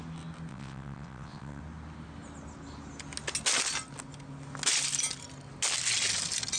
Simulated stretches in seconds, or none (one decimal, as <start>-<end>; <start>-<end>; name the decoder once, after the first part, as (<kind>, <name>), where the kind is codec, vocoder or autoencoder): 0.5-1.6 (vocoder, WaveNeXt)